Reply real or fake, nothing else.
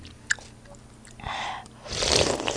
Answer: real